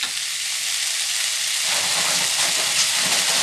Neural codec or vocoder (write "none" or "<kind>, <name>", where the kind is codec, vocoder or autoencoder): none